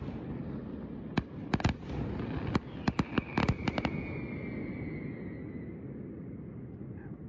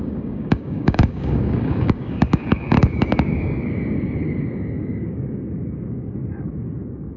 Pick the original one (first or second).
first